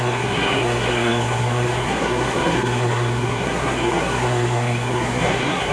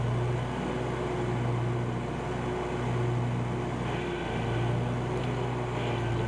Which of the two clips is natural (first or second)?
second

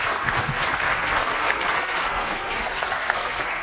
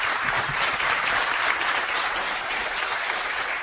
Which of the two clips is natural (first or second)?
second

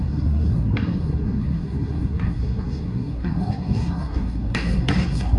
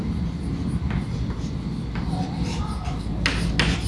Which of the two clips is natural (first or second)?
second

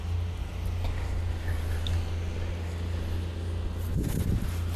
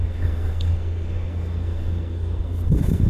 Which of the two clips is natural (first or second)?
first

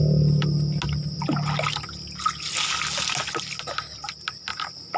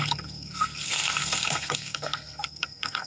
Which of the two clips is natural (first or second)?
first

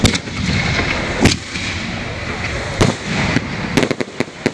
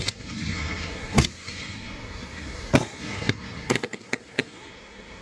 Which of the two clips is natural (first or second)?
first